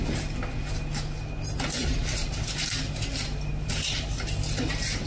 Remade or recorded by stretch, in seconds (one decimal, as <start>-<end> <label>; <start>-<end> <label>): 0.0-5.1 recorded